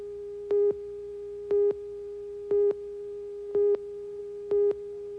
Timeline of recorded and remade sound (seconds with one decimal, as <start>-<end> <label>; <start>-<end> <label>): 0.0-5.2 recorded